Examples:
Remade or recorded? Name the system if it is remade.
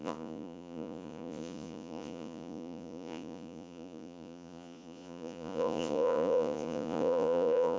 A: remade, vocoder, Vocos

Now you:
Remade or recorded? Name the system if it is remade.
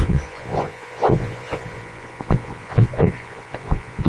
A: remade, vocoder, Vocos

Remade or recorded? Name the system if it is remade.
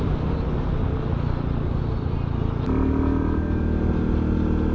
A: recorded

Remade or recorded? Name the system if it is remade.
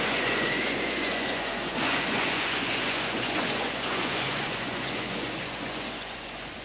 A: remade, vocoder, Vocos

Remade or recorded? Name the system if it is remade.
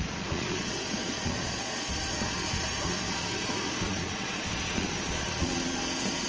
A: remade, vocoder, Vocos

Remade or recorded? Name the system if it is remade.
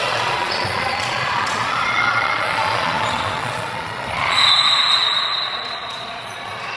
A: remade, vocoder, Vocos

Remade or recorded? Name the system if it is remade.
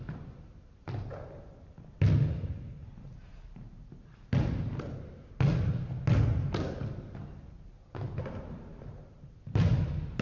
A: recorded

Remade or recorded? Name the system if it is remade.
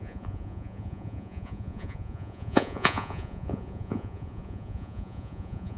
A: remade, vocoder, Vocos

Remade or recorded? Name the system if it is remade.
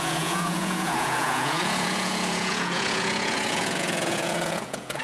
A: remade, vocoder, Vocos